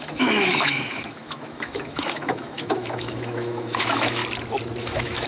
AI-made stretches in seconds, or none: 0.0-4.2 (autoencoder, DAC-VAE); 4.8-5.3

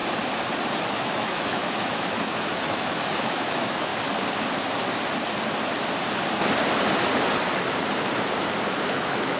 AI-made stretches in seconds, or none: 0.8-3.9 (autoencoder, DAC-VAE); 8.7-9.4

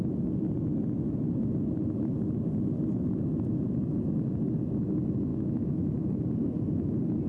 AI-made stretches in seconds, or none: 5.3-5.9 (autoencoder, DAC-VAE)